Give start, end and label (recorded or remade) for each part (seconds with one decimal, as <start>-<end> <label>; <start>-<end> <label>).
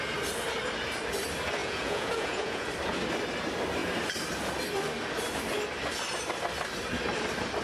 0.0-1.6 recorded; 1.6-2.7 remade; 2.7-7.6 recorded